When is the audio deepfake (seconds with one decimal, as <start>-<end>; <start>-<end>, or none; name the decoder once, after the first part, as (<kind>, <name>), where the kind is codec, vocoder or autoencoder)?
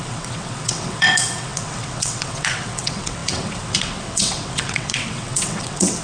0.0-6.0 (vocoder, WaveNeXt)